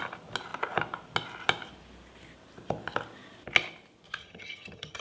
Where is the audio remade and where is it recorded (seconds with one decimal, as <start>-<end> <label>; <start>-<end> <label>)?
0.0-4.2 recorded; 4.2-5.0 remade